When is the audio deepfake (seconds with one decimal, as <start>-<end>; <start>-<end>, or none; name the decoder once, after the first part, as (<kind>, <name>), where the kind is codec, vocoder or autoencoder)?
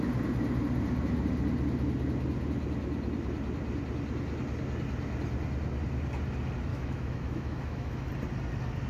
6.7-8.1 (autoencoder, DAC-VAE)